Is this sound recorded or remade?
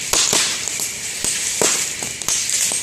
recorded